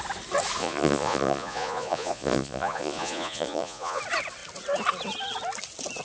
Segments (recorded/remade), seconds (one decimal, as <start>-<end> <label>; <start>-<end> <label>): 0.0-0.6 recorded; 0.6-4.0 remade; 4.0-6.0 recorded